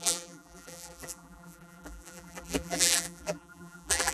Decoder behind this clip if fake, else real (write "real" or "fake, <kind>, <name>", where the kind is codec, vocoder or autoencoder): fake, vocoder, BigVGAN v2